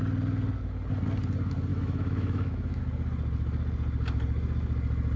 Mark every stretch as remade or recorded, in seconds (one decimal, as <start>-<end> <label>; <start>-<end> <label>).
0.0-1.7 recorded; 1.7-2.8 remade; 2.8-5.2 recorded